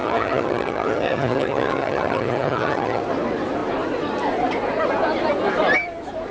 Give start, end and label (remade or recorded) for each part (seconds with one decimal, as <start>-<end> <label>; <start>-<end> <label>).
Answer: 0.0-3.0 remade; 3.0-6.3 recorded